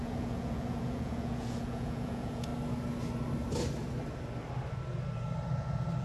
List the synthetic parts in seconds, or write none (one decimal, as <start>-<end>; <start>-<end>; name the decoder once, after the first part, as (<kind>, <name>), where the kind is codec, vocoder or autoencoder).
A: 0.0-2.5 (vocoder, Vocos)